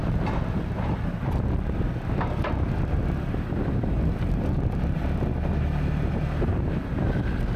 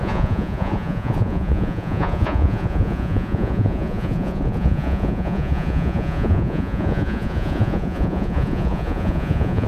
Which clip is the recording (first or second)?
first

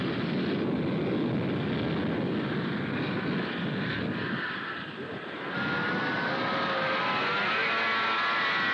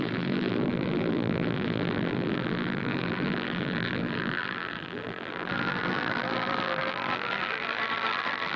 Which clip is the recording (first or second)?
first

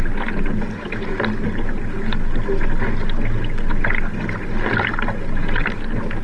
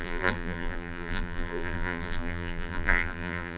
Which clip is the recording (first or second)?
first